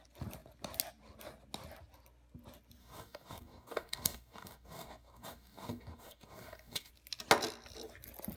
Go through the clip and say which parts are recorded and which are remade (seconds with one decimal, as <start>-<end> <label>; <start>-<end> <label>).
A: 0.0-2.8 recorded; 2.8-6.9 remade; 6.9-8.4 recorded